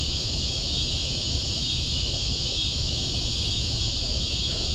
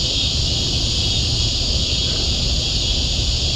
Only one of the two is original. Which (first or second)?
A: second